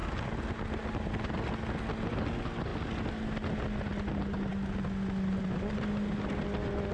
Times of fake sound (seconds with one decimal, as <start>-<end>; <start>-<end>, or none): none